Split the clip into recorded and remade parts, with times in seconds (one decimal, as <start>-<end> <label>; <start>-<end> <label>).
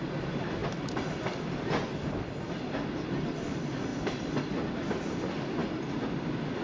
0.0-3.9 recorded; 3.9-4.5 remade; 4.5-6.6 recorded